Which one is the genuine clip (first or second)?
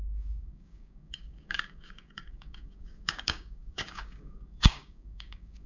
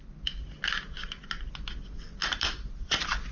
second